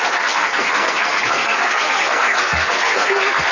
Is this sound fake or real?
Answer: fake